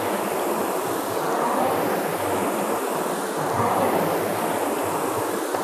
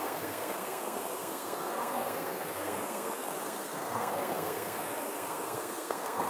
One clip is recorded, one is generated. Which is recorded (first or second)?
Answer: first